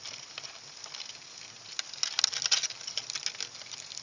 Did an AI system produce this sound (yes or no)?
no